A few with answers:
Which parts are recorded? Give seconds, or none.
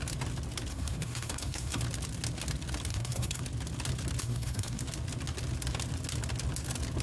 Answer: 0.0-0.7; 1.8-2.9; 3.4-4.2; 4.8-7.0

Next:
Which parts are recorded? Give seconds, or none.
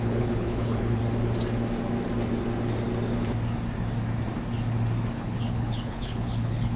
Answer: 1.0-5.1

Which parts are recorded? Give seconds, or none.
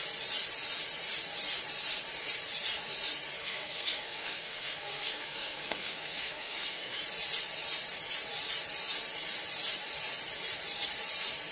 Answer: 0.0-3.4; 7.0-11.5